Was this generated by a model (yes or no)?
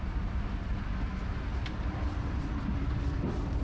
no